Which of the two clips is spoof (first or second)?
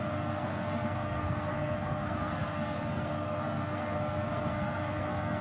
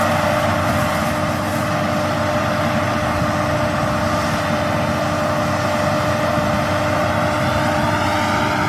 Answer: first